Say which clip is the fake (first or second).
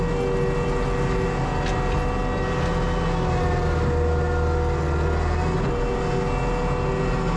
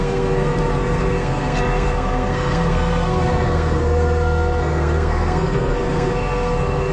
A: second